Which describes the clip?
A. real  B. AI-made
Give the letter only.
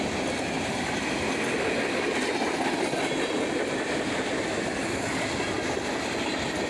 A